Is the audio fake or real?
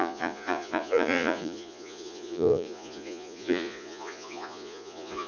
fake